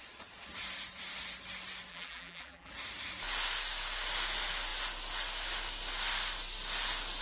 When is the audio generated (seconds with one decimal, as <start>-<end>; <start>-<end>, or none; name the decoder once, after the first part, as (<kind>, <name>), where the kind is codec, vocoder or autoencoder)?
1.9-2.7 (vocoder, BigVGAN v2)